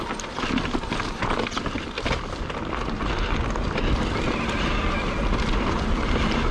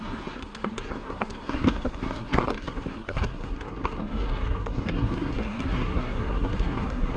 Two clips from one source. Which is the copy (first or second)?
second